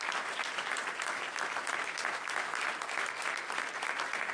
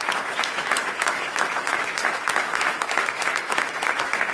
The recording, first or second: first